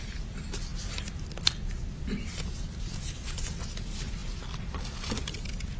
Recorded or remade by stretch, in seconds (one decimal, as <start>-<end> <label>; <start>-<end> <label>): 0.0-5.8 recorded